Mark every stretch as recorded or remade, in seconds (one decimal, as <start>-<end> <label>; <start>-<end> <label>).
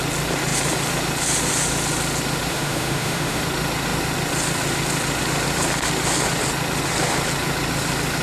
0.0-2.5 recorded; 2.5-3.4 remade; 3.4-8.2 recorded